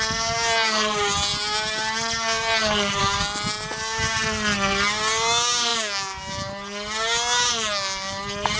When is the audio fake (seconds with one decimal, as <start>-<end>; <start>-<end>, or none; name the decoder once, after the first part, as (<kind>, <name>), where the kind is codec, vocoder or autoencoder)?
none